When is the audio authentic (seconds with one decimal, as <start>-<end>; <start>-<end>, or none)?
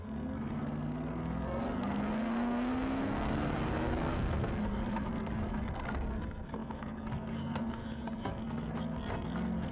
none